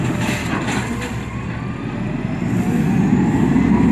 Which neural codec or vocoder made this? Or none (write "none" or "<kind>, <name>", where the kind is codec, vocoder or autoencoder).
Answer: none